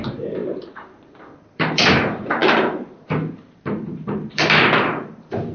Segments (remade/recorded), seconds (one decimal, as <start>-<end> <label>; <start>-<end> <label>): 0.0-5.5 remade